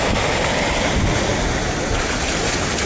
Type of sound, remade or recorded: recorded